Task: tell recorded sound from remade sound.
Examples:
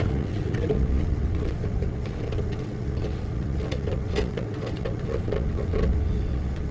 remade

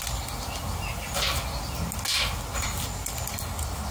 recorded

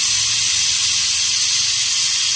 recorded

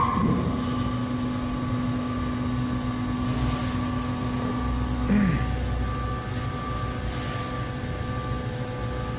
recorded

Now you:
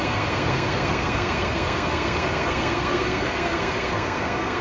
remade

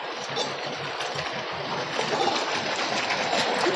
recorded